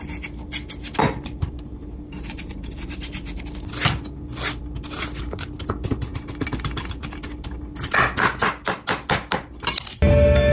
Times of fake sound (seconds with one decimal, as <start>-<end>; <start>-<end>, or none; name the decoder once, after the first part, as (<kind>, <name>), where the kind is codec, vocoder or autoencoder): none